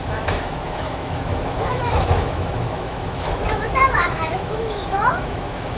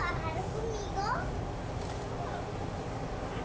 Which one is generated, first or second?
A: first